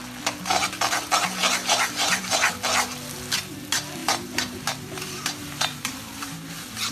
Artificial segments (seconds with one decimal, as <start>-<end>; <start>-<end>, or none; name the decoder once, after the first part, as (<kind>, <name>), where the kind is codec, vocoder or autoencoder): 4.0-6.5 (vocoder, BigVGAN v2)